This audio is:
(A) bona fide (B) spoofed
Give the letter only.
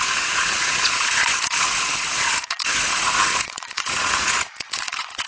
B